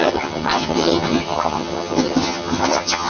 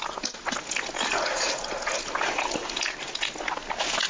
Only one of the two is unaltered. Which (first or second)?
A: second